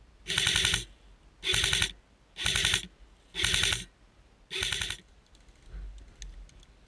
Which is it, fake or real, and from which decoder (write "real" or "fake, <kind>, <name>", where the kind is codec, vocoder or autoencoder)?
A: real